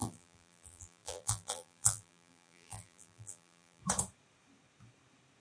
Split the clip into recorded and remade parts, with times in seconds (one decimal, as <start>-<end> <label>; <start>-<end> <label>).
0.0-3.8 remade; 3.8-5.4 recorded